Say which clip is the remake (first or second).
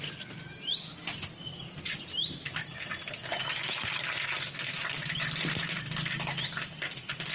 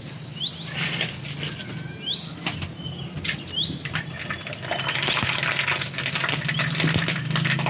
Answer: first